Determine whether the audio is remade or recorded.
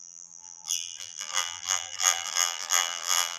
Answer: remade